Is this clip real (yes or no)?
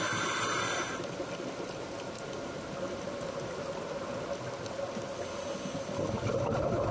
yes